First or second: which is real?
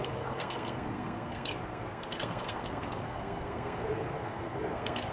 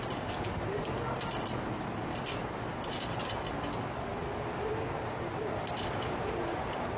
second